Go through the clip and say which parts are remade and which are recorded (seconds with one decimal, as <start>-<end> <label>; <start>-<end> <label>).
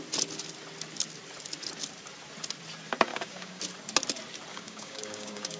0.0-3.1 recorded; 3.1-3.6 remade; 3.6-4.5 recorded; 4.5-5.6 remade